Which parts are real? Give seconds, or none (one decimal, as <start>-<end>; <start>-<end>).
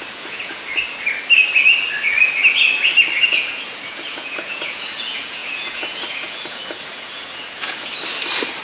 0.8-3.2; 7.9-8.6